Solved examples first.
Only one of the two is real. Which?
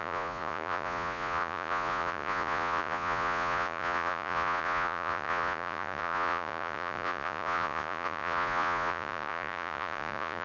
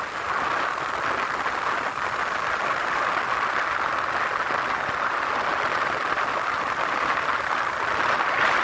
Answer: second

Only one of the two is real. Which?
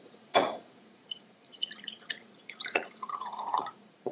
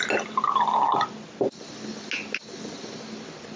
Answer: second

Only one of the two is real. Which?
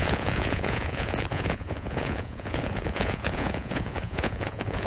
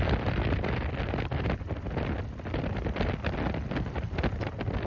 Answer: second